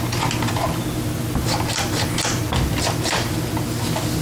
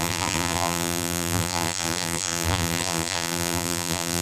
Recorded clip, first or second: first